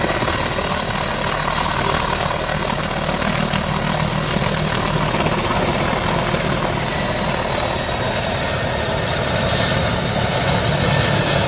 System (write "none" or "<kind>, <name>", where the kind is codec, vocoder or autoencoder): none